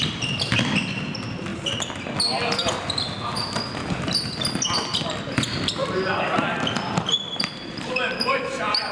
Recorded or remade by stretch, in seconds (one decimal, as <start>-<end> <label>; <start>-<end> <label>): 0.0-5.8 recorded; 5.8-8.4 remade; 8.4-8.9 recorded